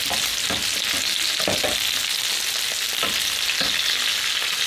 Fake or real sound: real